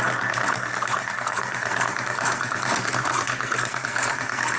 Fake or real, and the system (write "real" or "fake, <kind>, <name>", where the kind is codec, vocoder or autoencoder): fake, codec, SNAC